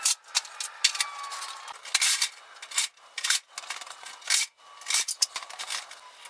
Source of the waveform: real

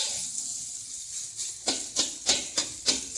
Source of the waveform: real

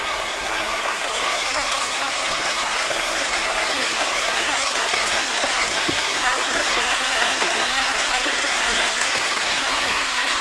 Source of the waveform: fake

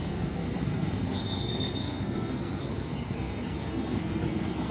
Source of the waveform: fake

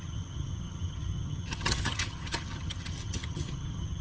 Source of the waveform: fake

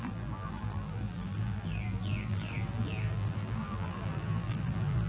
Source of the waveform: fake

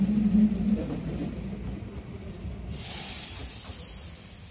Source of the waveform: real